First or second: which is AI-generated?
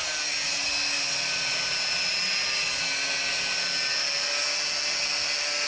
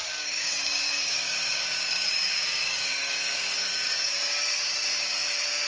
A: second